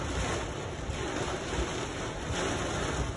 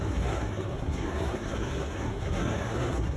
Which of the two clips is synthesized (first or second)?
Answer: second